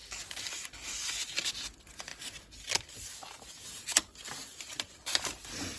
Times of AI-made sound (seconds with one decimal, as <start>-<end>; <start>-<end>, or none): none